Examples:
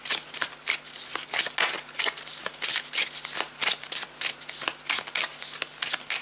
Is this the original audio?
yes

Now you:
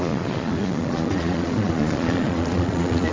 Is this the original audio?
no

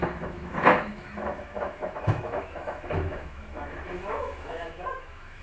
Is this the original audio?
no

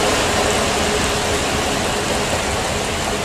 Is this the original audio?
yes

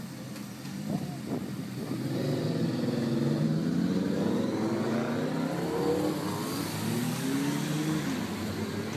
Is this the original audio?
yes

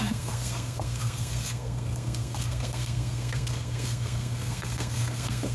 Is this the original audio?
no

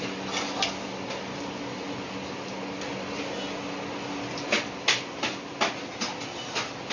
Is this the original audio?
yes